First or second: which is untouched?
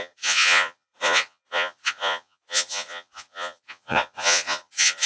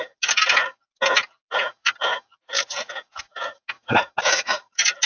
second